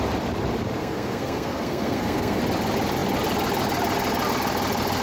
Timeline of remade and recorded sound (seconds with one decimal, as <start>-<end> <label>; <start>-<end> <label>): 0.0-0.8 recorded; 0.8-2.4 remade; 2.4-5.0 recorded